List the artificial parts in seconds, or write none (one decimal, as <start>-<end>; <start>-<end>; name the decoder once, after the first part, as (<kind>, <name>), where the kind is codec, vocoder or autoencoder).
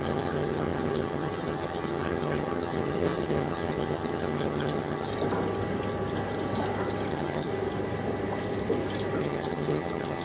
0.0-5.1 (vocoder, HiFi-GAN); 7.1-7.5; 9.2-10.2